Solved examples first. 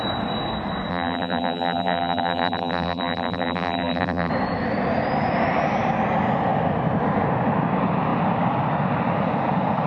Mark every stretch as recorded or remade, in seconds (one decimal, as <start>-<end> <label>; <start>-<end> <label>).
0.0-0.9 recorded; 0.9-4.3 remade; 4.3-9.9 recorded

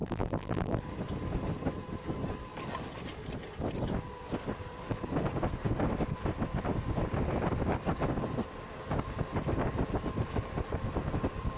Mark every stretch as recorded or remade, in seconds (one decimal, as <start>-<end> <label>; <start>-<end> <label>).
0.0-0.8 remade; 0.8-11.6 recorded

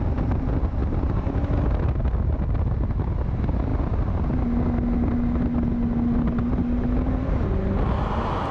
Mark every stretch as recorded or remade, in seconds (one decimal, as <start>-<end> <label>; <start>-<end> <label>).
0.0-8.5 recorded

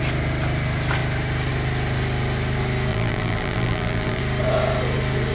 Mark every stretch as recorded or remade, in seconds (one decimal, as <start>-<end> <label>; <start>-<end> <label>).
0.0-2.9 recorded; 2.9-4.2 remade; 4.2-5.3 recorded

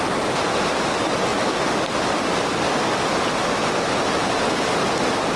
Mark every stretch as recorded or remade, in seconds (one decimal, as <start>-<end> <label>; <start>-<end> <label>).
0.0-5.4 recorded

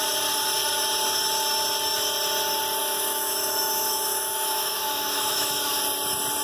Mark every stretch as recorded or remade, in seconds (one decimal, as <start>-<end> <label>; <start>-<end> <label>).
0.0-2.8 recorded; 2.8-5.8 remade; 5.8-6.4 recorded

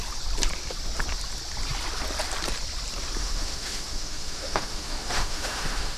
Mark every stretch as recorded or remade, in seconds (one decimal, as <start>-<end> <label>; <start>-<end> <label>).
0.0-3.2 recorded; 3.2-6.0 remade

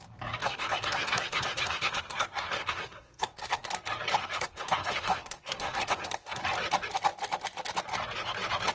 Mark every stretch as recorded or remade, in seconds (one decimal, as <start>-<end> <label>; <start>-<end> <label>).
0.0-0.4 recorded; 0.4-3.7 remade; 3.7-4.2 recorded; 4.2-6.4 remade; 6.4-8.7 recorded